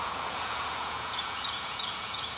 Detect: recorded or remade remade